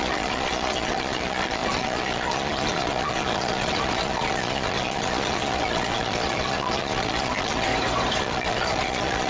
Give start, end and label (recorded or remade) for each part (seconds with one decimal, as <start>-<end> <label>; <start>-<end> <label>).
0.0-7.7 remade; 7.7-8.2 recorded; 8.2-9.3 remade